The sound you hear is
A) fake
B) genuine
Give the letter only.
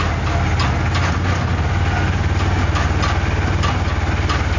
B